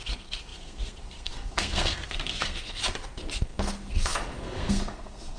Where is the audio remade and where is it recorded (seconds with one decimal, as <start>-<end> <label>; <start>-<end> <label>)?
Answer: 0.0-2.8 remade; 2.8-3.4 recorded; 3.4-5.4 remade